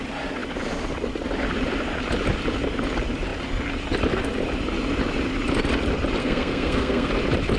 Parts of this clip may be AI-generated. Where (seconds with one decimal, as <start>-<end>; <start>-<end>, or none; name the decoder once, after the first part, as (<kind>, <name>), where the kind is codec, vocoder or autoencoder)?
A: 6.2-7.1 (codec, SNAC)

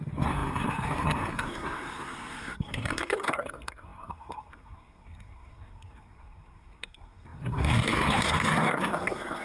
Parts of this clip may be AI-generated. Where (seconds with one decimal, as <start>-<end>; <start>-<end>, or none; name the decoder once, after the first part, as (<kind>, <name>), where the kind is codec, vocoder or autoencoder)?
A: 0.0-9.4 (codec, SNAC)

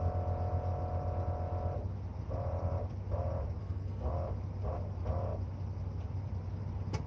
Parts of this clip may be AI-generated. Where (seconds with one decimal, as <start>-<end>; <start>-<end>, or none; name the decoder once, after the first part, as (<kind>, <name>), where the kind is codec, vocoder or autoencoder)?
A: 3.6-4.1 (codec, SNAC)